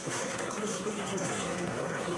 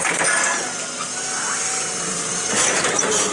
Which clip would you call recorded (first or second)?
second